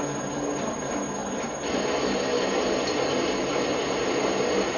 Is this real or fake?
real